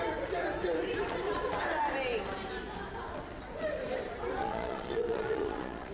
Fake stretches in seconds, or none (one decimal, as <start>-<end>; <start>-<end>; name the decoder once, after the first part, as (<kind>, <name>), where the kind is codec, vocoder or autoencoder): 4.4-5.9 (vocoder, Vocos)